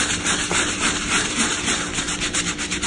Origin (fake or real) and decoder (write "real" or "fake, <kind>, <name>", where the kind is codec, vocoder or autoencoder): real